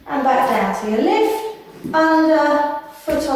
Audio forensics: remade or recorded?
recorded